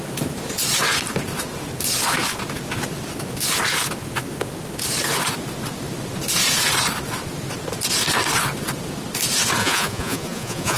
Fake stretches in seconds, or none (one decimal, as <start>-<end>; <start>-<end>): 9.6-10.8